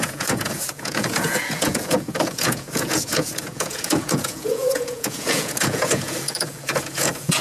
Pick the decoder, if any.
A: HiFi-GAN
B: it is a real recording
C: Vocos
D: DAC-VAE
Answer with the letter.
C